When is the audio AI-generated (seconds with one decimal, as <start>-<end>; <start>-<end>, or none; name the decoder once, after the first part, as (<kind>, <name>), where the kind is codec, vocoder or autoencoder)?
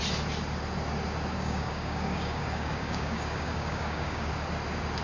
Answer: 1.3-4.3 (codec, DAC)